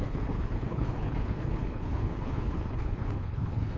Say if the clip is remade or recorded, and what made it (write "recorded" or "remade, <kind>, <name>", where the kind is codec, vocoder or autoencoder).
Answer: remade, codec, HILCodec